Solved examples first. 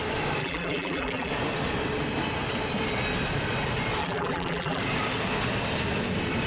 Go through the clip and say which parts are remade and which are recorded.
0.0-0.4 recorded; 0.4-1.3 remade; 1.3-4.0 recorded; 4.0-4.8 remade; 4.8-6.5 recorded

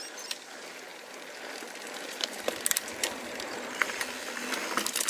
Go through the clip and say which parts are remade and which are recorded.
0.0-0.9 recorded; 0.9-4.0 remade; 4.0-5.1 recorded

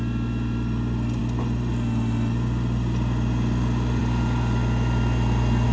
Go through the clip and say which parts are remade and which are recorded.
0.0-5.7 recorded

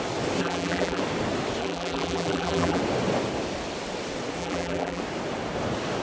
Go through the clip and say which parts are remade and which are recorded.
0.0-0.4 recorded; 0.4-1.0 remade; 1.0-1.6 recorded; 1.6-2.8 remade; 2.8-4.4 recorded; 4.4-5.0 remade; 5.0-6.0 recorded

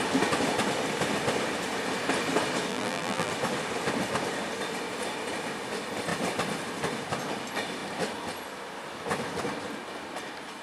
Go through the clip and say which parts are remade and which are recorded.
0.0-2.7 recorded; 2.7-3.3 remade; 3.3-10.6 recorded

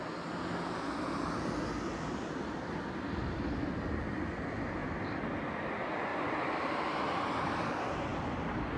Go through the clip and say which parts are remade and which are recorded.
0.0-6.1 recorded; 6.1-7.7 remade; 7.7-8.8 recorded